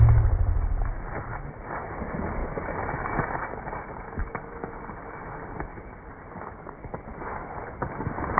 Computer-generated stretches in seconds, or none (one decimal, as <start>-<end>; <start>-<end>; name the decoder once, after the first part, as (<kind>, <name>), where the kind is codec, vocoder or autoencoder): 2.4-3.2 (autoencoder, DAC-VAE); 4.2-4.8